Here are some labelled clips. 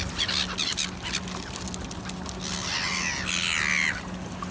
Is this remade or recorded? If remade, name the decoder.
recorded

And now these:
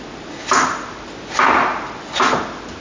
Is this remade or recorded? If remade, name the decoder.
recorded